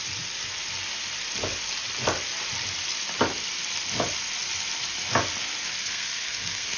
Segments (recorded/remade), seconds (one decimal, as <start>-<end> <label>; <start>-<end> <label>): 0.0-5.8 recorded; 5.8-6.8 remade